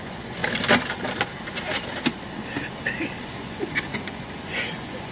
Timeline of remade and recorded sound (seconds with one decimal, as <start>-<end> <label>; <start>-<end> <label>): 0.0-0.4 remade; 0.4-3.2 recorded; 3.2-5.1 remade